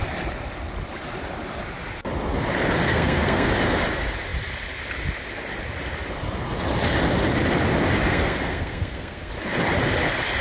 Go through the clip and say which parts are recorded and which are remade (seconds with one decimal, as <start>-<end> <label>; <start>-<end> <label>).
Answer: 0.0-2.9 recorded; 2.9-3.5 remade; 3.5-8.1 recorded; 8.1-9.3 remade; 9.3-10.4 recorded